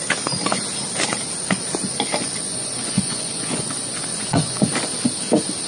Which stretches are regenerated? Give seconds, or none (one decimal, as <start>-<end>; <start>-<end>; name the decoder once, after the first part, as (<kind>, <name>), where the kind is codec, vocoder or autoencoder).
2.2-4.7 (vocoder, Vocos)